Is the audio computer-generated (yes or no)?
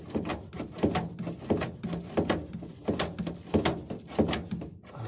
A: no